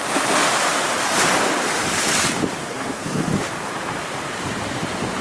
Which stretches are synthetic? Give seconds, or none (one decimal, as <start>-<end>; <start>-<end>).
2.6-3.3